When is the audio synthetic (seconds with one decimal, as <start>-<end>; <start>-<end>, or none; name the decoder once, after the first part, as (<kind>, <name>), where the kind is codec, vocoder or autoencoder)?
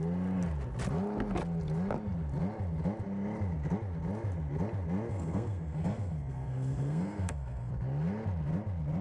5.1-7.7 (codec, SNAC)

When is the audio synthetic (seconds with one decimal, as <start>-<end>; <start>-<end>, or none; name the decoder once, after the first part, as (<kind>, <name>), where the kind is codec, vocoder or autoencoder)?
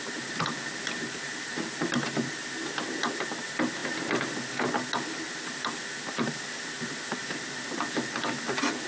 none